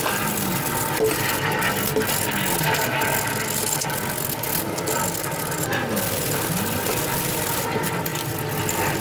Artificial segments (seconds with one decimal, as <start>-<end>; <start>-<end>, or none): none